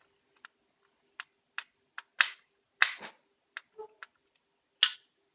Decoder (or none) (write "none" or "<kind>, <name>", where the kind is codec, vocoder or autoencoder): none